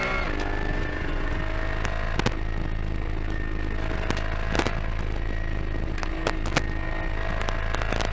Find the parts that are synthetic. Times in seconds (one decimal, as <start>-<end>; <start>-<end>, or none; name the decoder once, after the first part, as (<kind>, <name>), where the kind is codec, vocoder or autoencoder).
0.7-1.4 (vocoder, Vocos)